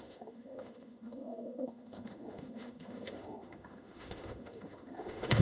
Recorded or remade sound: remade